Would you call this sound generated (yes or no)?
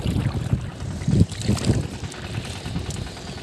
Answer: no